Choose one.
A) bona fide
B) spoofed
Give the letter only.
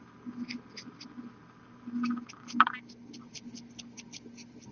A